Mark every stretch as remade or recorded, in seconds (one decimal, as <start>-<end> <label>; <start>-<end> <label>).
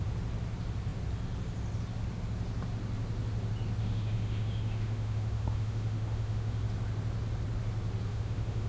0.0-3.8 recorded; 3.8-6.6 remade; 6.6-8.1 recorded; 8.1-8.7 remade